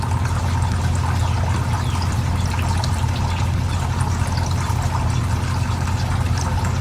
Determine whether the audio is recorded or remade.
recorded